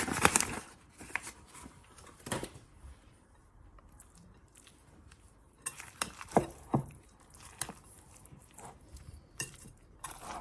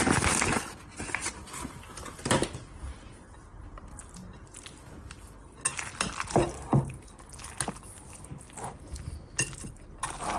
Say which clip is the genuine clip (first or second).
second